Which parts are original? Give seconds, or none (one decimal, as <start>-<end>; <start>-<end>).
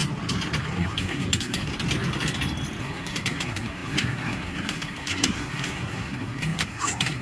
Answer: 0.0-0.6; 1.7-2.8